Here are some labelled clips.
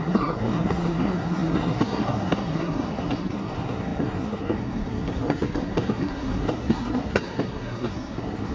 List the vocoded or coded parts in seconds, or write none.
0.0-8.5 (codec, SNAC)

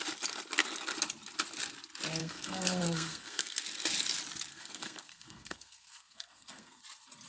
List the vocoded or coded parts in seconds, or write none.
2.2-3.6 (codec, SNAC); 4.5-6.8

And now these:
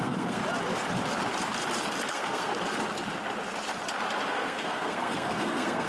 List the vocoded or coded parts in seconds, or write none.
0.0-0.4 (codec, SNAC); 2.1-2.5; 4.3-5.9